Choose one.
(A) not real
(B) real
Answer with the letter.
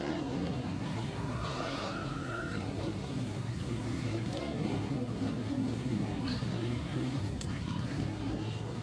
A